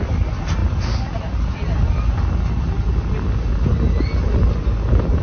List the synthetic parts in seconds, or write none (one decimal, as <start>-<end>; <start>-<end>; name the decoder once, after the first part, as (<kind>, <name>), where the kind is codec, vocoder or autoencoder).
none